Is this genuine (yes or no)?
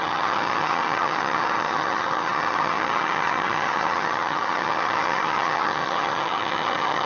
no